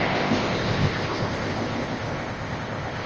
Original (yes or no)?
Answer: no